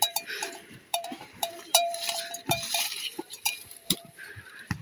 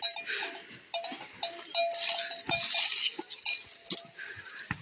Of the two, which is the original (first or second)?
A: second